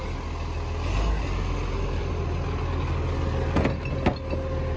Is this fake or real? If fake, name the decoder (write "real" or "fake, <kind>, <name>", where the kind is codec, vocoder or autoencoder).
real